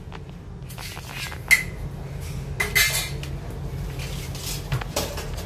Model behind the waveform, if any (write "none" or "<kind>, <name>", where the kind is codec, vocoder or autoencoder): none